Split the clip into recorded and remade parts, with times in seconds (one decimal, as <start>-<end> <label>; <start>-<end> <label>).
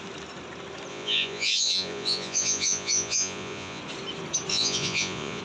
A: 0.0-0.9 recorded; 0.9-3.8 remade; 3.8-4.5 recorded; 4.5-5.4 remade